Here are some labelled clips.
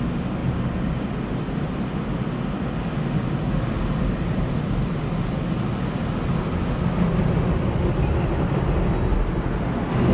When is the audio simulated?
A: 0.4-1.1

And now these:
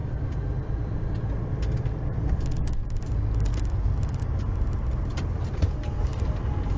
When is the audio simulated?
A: none